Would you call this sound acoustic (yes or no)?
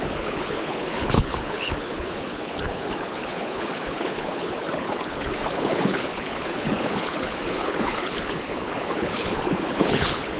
no